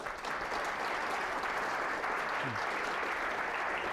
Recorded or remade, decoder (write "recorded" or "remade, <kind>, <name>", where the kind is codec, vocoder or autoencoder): remade, vocoder, BigVGAN v2